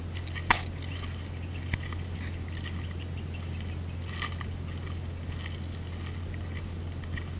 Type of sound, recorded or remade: recorded